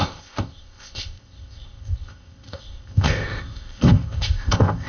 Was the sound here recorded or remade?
remade